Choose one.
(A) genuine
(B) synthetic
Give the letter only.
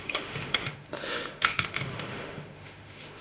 B